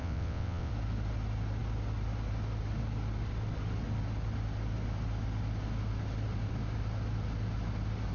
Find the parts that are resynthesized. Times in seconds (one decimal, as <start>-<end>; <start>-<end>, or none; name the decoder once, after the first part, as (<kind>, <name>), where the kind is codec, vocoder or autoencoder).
0.0-0.7 (vocoder, WaveNeXt)